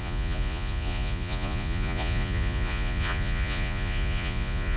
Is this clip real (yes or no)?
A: no